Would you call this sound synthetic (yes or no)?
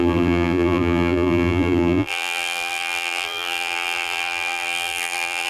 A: yes